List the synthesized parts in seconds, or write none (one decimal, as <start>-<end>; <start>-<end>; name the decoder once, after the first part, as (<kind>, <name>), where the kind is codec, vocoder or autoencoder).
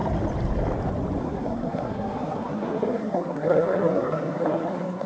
1.2-5.1 (codec, SNAC)